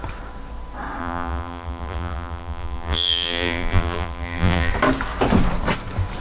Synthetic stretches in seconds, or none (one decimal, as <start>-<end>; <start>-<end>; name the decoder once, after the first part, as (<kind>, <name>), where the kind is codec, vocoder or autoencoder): 1.0-4.7 (vocoder, BigVGAN v2)